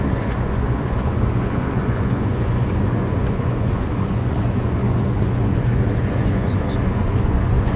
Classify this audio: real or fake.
fake